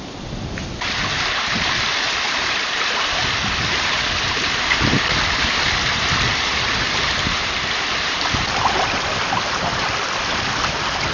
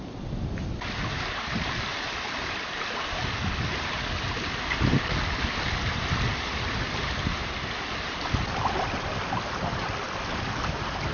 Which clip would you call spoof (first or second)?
first